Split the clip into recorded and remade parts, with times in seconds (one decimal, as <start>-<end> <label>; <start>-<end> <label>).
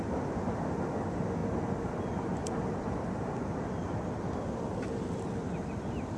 0.0-2.4 recorded; 2.4-3.4 remade; 3.4-6.2 recorded